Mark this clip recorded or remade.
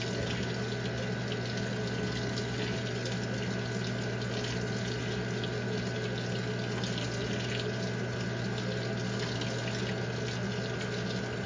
recorded